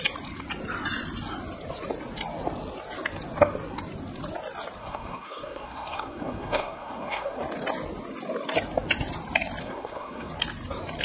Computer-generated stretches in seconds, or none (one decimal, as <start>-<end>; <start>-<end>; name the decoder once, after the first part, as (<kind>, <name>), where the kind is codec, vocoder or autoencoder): 4.8-7.4 (codec, SNAC); 9.6-10.3